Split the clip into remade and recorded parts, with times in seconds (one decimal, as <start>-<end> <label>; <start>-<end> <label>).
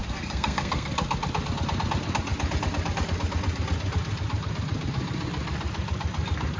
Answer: 0.0-0.9 remade; 0.9-6.6 recorded